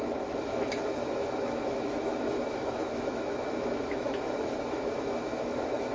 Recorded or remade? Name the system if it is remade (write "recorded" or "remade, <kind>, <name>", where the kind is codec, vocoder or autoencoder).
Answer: remade, autoencoder, DAC-VAE